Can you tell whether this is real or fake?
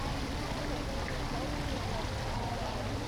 real